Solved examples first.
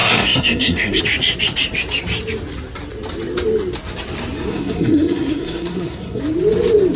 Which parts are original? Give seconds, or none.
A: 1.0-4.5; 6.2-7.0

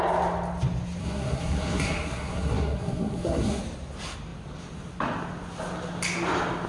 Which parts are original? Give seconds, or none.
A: 0.0-1.0; 3.6-6.7

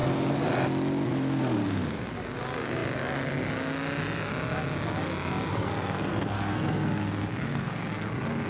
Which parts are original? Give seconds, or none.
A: 0.0-5.5; 8.1-8.5

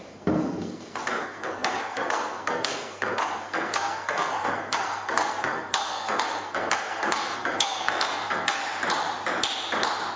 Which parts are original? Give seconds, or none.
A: 8.6-10.2

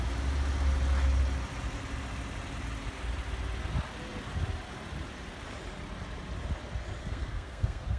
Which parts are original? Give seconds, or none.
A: 0.0-7.0

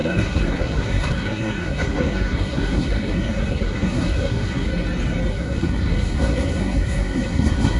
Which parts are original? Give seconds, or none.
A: 4.7-5.3

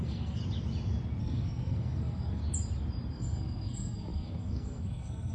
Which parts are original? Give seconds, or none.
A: 0.4-1.2; 2.4-3.1